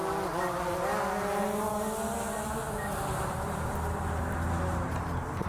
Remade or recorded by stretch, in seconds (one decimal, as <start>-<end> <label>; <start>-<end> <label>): 0.0-5.5 recorded